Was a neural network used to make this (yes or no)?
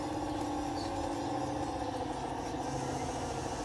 no